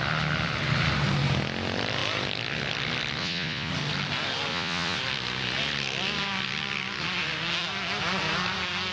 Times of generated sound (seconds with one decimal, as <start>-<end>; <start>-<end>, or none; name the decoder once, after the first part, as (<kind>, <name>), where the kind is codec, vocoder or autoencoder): 3.2-3.7 (vocoder, Vocos); 4.5-5.0